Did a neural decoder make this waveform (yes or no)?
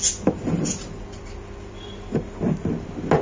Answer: no